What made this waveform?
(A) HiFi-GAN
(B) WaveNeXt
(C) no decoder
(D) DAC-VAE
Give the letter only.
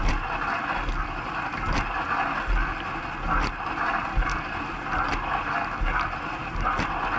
C